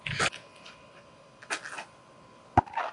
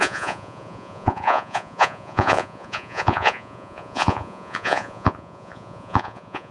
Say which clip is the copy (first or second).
second